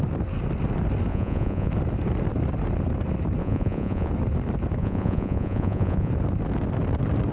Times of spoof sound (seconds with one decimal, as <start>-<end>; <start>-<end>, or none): 1.1-1.7; 3.4-4.1; 4.8-6.1